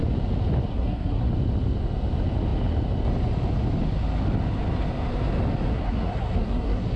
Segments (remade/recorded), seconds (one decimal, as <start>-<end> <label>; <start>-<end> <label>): 0.0-0.7 recorded; 0.7-1.3 remade; 1.3-5.7 recorded; 5.7-7.0 remade